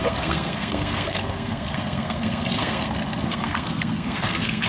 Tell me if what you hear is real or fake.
fake